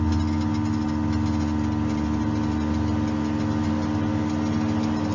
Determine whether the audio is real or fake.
real